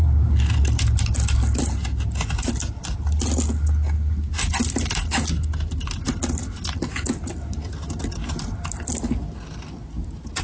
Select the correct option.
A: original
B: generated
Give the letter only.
A